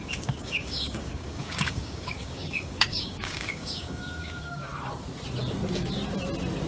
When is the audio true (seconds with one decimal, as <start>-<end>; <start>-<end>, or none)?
4.7-6.7